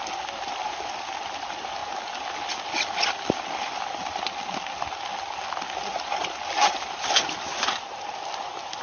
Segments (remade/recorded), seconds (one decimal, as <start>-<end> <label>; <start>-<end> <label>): 0.0-1.8 remade; 1.8-6.0 recorded; 6.0-8.8 remade